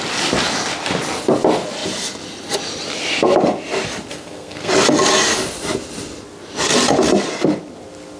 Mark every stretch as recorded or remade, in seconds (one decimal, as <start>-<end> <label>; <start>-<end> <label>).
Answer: 0.0-4.1 recorded; 4.1-4.7 remade; 4.7-8.2 recorded